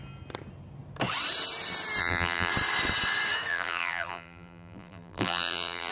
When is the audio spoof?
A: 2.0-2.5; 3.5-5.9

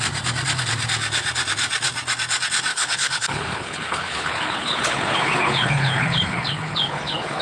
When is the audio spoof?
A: 2.7-7.4

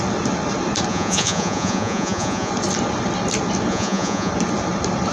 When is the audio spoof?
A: 0.9-2.5; 3.7-4.3

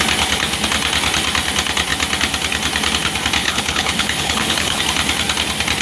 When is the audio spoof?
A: 3.4-4.8